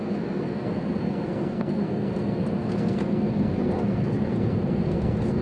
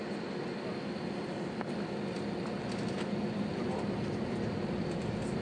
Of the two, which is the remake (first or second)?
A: first